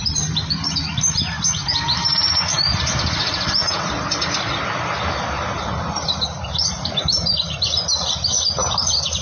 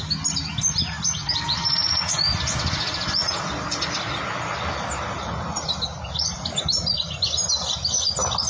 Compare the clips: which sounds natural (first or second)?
second